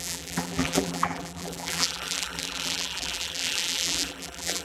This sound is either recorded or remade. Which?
remade